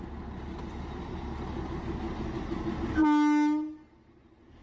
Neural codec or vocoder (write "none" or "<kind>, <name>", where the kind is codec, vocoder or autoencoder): none